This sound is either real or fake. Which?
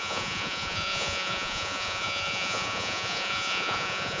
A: fake